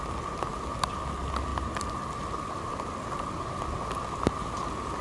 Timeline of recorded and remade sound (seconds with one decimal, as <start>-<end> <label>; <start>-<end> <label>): 0.0-1.5 recorded; 1.5-3.6 remade; 3.6-5.0 recorded